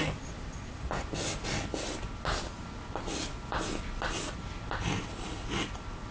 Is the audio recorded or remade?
recorded